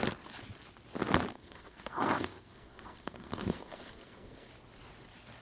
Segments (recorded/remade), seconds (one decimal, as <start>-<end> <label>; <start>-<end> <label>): 0.0-1.3 recorded; 1.3-4.5 remade; 4.5-5.4 recorded